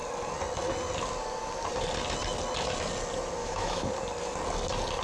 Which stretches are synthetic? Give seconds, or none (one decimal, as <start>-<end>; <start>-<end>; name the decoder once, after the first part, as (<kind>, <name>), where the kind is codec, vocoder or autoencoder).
3.4-3.9 (autoencoder, DAC-VAE)